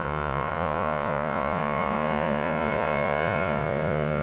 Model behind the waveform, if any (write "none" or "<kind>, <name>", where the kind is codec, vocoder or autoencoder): vocoder, Vocos